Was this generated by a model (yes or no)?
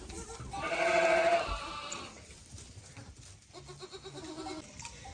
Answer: yes